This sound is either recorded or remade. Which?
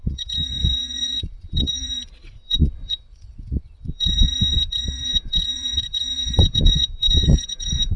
remade